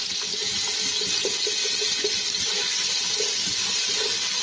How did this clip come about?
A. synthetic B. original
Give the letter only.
B